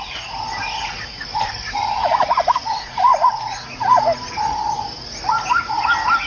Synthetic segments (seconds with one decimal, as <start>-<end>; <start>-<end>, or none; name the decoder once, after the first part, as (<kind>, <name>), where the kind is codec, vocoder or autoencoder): 1.3-4.0 (vocoder, Vocos)